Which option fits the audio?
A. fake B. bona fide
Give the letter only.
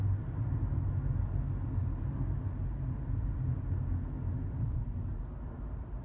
B